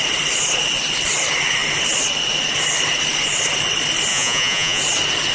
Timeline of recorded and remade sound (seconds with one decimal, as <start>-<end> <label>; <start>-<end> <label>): 0.0-4.1 recorded; 4.1-4.8 remade; 4.8-5.3 recorded